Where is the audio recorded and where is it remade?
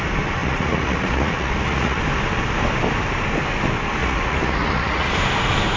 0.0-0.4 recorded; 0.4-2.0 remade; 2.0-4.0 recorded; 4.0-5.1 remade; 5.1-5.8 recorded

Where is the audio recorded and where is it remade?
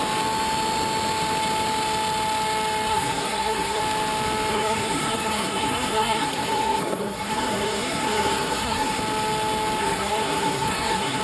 0.0-2.9 recorded; 2.9-3.8 remade; 3.8-4.5 recorded; 4.5-9.0 remade; 9.0-9.8 recorded; 9.8-11.2 remade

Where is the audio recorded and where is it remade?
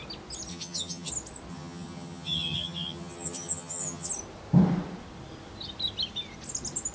0.0-0.5 recorded; 0.5-1.1 remade; 1.1-1.5 recorded; 1.5-4.1 remade; 4.1-6.9 recorded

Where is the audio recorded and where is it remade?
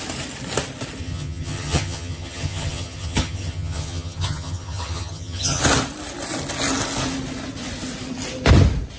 0.0-1.0 recorded; 1.0-5.6 remade; 5.6-9.0 recorded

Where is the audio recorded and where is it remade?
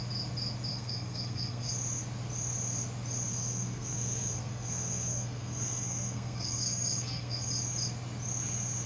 0.0-0.7 recorded; 0.7-1.7 remade; 1.7-3.3 recorded; 3.3-7.5 remade; 7.5-8.9 recorded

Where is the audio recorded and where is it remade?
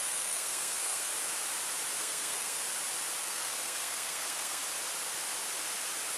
0.0-1.1 remade; 1.1-2.0 recorded; 2.0-2.6 remade; 2.6-3.2 recorded; 3.2-4.6 remade; 4.6-6.2 recorded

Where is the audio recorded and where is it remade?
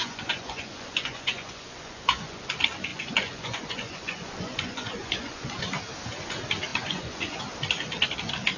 0.0-2.5 remade; 2.5-2.9 recorded; 2.9-5.6 remade; 5.6-6.7 recorded; 6.7-7.4 remade; 7.4-8.6 recorded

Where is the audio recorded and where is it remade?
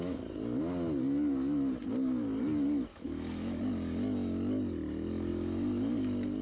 0.0-2.9 recorded; 2.9-3.6 remade; 3.6-6.4 recorded